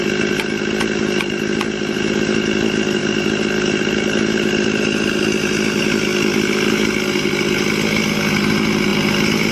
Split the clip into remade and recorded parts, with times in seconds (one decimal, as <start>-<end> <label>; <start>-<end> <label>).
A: 0.0-9.5 recorded